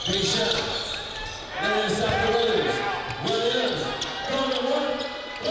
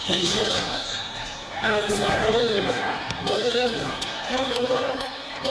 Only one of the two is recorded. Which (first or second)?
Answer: first